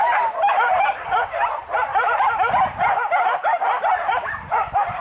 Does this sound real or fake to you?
fake